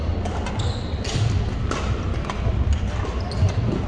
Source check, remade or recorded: recorded